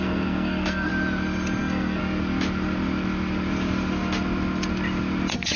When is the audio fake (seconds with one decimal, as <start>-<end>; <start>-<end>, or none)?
0.0-0.9; 1.6-2.0